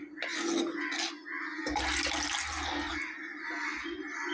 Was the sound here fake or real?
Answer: real